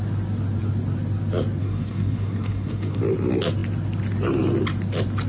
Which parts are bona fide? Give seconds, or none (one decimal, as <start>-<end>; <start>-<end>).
0.0-1.6; 3.0-5.3